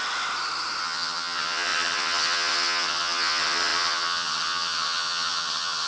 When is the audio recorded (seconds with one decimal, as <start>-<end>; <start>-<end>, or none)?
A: 0.0-0.8